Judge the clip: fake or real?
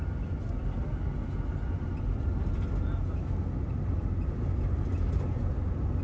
real